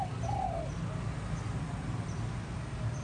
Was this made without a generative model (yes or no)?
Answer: yes